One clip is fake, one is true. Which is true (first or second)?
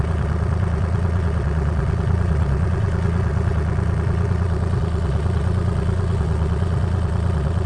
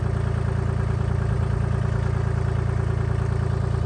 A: second